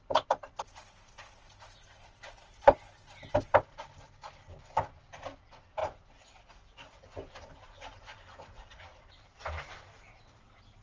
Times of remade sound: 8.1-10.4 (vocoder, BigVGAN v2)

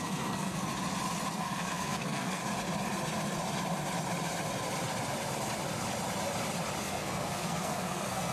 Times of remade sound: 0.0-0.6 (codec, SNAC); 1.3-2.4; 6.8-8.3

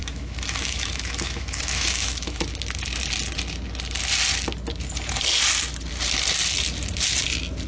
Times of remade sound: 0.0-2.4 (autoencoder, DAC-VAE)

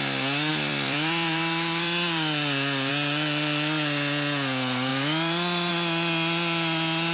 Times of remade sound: 0.5-2.9 (vocoder, BigVGAN v2); 4.9-5.7

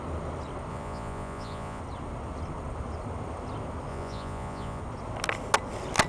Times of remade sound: 0.7-1.8 (vocoder, Vocos); 3.9-4.8